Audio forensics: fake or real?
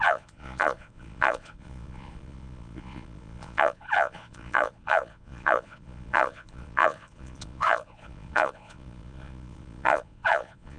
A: fake